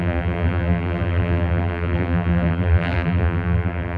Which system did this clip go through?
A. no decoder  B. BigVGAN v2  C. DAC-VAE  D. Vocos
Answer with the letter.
B